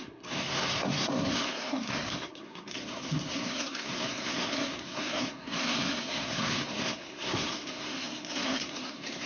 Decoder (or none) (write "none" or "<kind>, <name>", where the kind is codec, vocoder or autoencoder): codec, SNAC